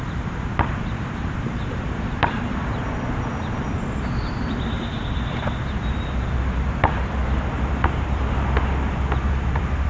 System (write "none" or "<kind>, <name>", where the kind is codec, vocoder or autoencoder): vocoder, BigVGAN v2